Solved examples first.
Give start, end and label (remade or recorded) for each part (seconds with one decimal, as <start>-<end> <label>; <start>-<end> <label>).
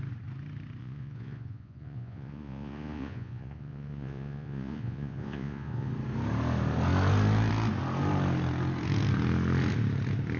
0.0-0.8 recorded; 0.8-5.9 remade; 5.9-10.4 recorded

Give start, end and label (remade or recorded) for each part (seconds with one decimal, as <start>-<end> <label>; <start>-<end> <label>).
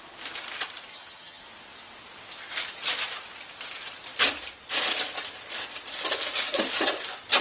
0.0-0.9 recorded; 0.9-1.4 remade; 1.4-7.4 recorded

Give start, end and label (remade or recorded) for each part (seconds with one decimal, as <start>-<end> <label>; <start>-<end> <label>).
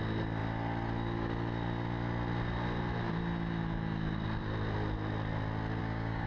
0.0-5.8 recorded; 5.8-6.3 remade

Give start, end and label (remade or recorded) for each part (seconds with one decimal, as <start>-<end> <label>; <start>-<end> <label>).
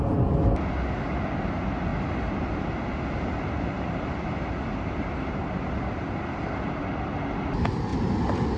0.0-8.6 recorded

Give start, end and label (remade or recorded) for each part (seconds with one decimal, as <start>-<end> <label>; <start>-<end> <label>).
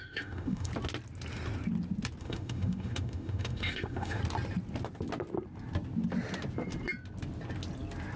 0.0-0.7 remade; 0.7-2.2 recorded; 2.2-4.2 remade; 4.2-8.2 recorded